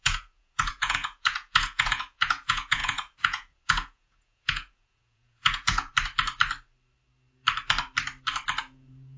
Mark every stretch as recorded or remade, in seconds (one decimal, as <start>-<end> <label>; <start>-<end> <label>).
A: 0.0-5.9 remade; 5.9-8.6 recorded; 8.6-9.2 remade